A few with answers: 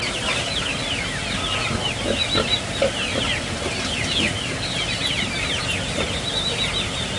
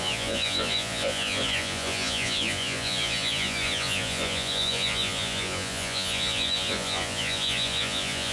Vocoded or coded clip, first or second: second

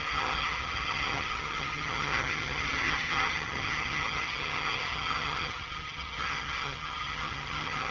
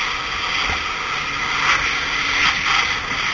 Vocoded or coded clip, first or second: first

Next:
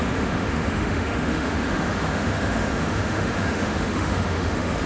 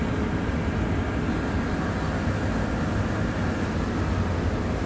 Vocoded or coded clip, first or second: first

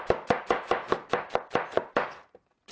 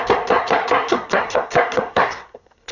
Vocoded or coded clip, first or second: second